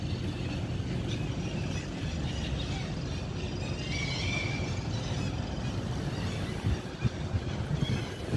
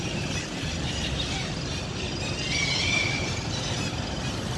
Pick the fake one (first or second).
second